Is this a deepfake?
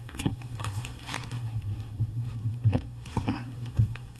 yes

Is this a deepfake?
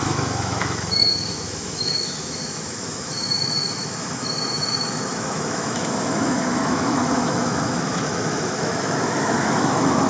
yes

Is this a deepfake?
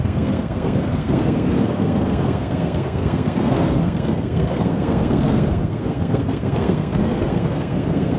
yes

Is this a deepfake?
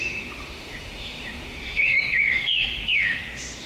yes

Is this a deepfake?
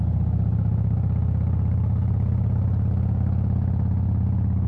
no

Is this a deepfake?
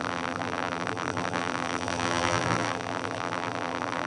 yes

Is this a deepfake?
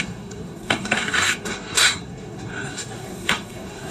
yes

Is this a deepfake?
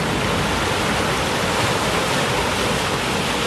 no